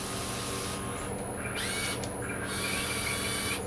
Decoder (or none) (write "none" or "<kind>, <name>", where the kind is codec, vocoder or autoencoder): none